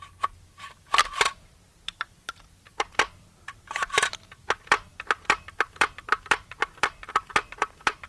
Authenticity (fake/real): fake